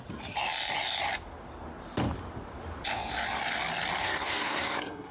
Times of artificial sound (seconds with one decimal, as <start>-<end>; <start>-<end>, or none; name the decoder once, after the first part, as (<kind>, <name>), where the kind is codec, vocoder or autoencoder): 4.0-5.1 (codec, SNAC)